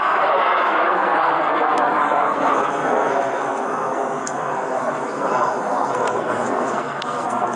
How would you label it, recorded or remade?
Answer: remade